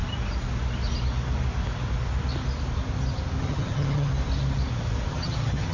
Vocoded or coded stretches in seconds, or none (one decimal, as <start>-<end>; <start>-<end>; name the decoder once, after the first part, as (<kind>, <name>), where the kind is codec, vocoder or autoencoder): 3.4-4.1 (vocoder, HiFi-GAN); 5.1-5.7